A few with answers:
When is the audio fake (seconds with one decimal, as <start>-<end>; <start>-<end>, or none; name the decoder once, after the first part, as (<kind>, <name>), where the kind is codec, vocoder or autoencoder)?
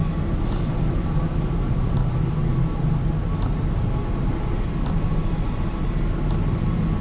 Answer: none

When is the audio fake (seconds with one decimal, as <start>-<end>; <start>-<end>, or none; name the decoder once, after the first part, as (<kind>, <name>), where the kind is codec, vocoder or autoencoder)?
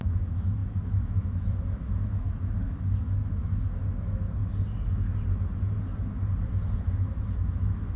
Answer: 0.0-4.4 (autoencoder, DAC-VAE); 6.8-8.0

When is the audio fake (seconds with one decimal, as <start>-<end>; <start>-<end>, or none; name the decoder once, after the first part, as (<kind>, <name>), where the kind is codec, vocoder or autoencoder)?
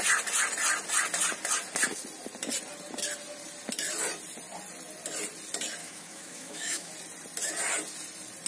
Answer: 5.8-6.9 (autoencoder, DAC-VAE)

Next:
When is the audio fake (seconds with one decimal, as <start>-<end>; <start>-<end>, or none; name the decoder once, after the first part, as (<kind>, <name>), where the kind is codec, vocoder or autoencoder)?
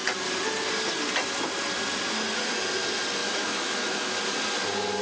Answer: 3.2-4.2 (autoencoder, DAC-VAE)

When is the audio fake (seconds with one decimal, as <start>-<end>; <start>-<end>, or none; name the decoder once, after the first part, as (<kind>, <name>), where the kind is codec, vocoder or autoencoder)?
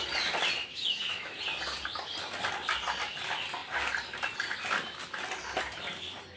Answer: 0.6-1.4 (autoencoder, DAC-VAE)